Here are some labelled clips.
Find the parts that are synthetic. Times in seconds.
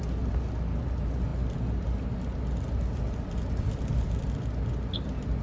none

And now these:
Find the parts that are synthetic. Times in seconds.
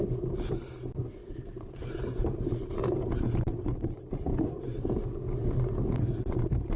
1.2-5.3 (vocoder, BigVGAN v2)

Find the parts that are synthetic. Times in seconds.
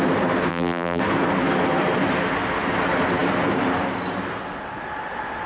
0.5-1.0 (vocoder, BigVGAN v2)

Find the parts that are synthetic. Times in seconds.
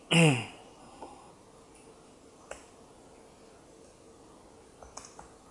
0.8-1.3 (codec, SNAC)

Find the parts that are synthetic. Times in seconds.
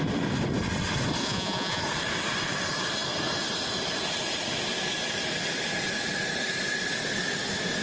1.2-1.8 (vocoder, Vocos)